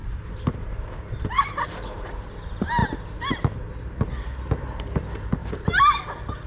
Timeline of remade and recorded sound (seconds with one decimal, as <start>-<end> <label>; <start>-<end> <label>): 0.0-2.1 remade; 2.1-5.4 recorded; 5.4-6.0 remade; 6.0-6.5 recorded